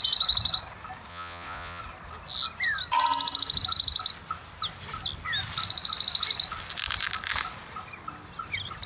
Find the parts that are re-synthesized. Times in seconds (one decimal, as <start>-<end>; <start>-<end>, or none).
1.1-1.8